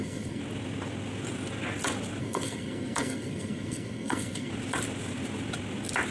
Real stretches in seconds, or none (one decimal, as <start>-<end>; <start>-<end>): 0.4-2.2; 4.5-6.1

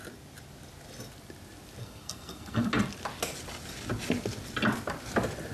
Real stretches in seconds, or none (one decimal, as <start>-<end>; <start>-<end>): 0.0-1.8; 2.7-5.5

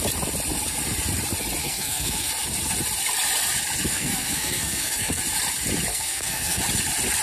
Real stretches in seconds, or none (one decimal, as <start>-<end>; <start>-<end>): 0.0-1.6; 2.3-3.9; 5.2-5.9; 6.6-7.2

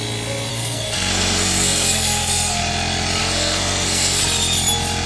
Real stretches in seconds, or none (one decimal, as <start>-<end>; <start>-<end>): 0.0-0.5; 2.6-3.2; 4.2-5.1

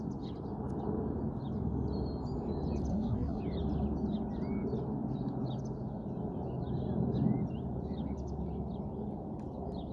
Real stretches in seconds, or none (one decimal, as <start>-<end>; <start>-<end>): 0.0-2.9; 3.4-9.9

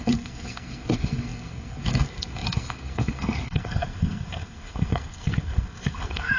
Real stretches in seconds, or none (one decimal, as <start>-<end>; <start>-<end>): none

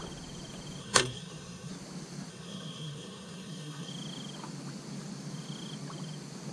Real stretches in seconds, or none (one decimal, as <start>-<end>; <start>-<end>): 0.0-0.8; 1.7-2.3; 3.9-6.5